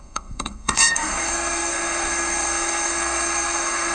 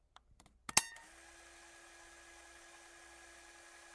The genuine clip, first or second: second